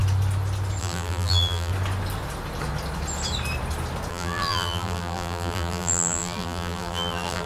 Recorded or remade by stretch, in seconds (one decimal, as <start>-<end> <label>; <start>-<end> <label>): 0.0-0.8 recorded; 0.8-1.7 remade; 1.7-4.1 recorded; 4.1-7.5 remade